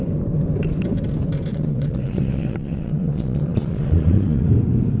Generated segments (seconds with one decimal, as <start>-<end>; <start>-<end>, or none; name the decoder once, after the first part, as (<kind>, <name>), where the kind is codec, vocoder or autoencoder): 1.5-4.5 (vocoder, Vocos)